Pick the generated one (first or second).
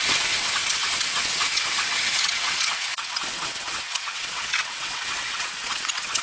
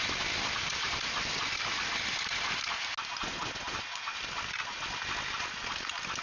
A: first